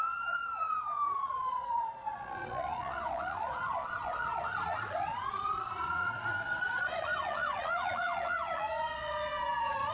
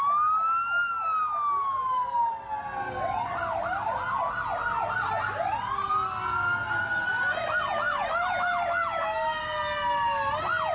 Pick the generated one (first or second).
first